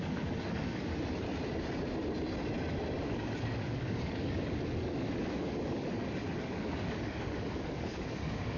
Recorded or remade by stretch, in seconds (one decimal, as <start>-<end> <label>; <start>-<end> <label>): 0.0-0.9 remade; 0.9-3.0 recorded; 3.0-8.6 remade